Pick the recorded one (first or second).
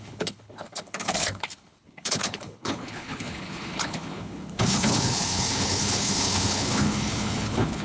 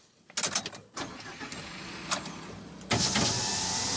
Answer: second